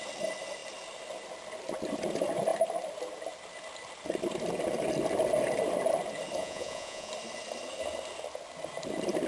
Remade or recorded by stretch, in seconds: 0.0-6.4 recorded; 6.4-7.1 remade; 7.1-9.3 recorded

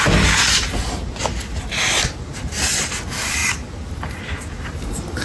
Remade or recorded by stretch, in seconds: 0.0-5.2 recorded

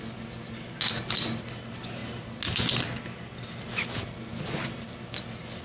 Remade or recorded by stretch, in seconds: 0.0-5.6 recorded

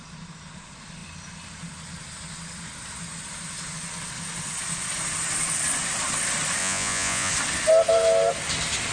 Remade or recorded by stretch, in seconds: 0.0-6.6 recorded; 6.6-7.3 remade; 7.3-8.9 recorded

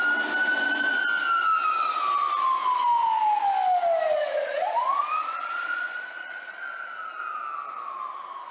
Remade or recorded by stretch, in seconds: 0.0-4.1 recorded; 4.1-7.2 remade; 7.2-8.5 recorded

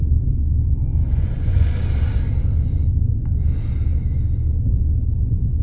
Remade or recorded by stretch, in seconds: 0.0-0.9 recorded; 0.9-1.8 remade; 1.8-5.6 recorded

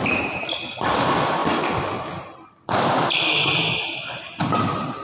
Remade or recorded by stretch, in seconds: 0.0-5.0 recorded